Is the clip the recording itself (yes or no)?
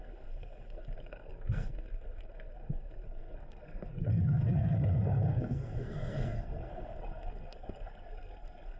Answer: no